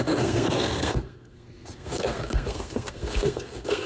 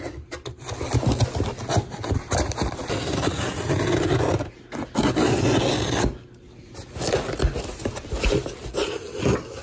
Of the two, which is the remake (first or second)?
first